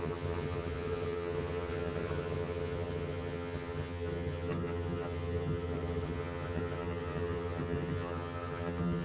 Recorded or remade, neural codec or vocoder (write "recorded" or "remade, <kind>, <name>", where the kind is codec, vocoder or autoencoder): remade, vocoder, HiFi-GAN